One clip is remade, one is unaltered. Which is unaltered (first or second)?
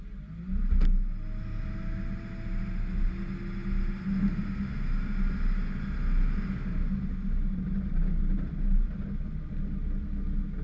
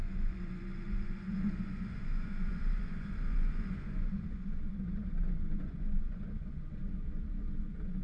first